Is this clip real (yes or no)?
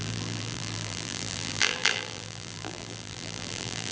no